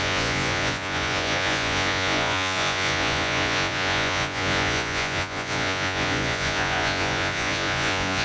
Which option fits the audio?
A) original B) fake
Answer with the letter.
B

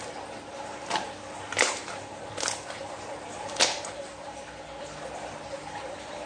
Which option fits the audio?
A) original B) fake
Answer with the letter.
A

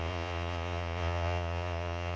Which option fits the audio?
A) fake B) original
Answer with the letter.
A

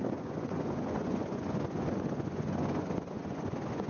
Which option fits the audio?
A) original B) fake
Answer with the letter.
B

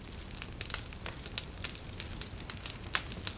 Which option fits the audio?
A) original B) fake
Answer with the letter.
A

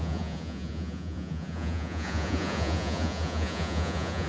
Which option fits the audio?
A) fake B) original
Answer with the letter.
A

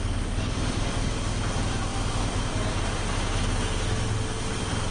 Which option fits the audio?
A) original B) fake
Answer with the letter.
A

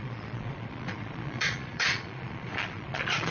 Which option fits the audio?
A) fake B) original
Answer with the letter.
A